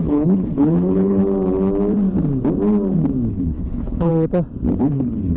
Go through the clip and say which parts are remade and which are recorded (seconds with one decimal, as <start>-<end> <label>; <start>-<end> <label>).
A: 0.0-1.2 remade; 1.2-3.3 recorded; 3.3-4.1 remade; 4.1-4.8 recorded; 4.8-5.4 remade